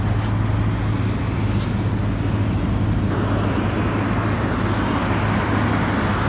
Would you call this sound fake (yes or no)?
no